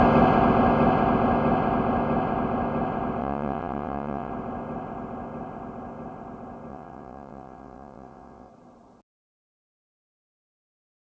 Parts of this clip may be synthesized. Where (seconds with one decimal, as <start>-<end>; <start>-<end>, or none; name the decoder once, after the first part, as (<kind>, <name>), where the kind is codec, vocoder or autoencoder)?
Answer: 3.2-4.3 (vocoder, WaveNeXt); 6.7-8.5